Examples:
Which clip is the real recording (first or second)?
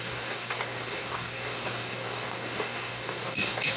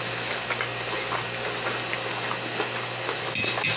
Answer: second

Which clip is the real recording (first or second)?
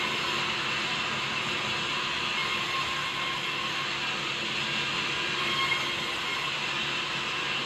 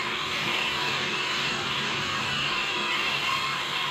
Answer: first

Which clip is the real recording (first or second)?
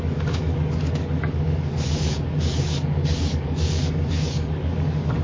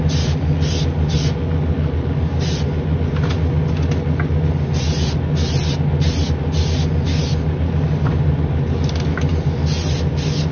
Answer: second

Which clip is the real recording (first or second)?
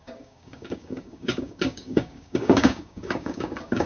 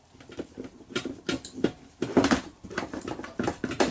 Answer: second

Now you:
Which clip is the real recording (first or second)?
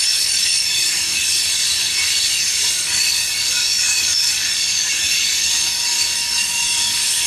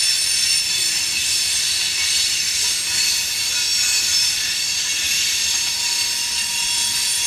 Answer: second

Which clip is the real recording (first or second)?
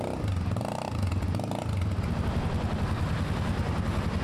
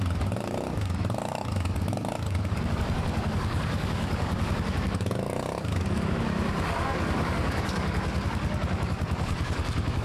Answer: first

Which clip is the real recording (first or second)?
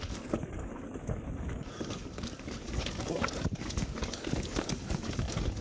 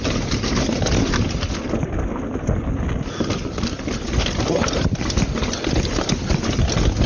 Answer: second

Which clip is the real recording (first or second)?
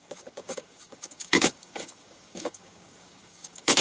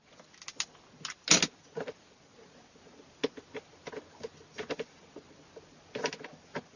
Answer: second